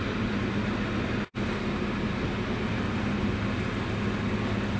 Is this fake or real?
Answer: real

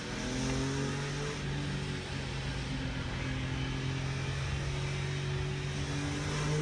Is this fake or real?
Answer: real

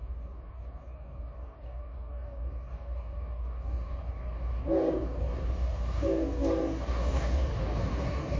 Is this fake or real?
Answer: fake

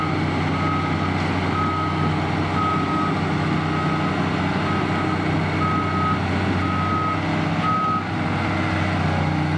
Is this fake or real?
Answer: real